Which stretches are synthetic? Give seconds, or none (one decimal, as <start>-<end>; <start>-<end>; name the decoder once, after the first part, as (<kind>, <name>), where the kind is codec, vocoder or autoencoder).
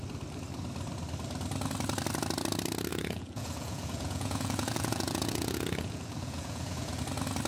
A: 2.9-7.0 (vocoder, Vocos)